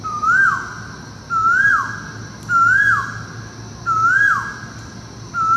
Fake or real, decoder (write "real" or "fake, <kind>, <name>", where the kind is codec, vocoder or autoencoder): real